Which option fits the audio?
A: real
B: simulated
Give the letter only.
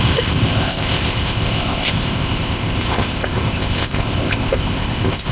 B